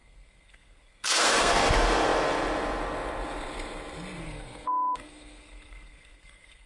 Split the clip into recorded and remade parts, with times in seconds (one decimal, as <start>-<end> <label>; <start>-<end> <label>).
0.0-1.5 remade; 1.5-4.2 recorded; 4.2-6.7 remade